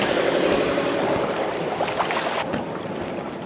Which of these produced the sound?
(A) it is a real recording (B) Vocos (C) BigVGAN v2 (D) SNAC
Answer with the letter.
A